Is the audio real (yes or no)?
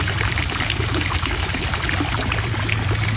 no